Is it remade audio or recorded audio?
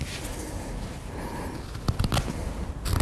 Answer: recorded